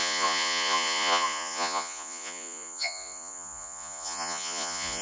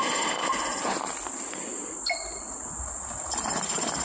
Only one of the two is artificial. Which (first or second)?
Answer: first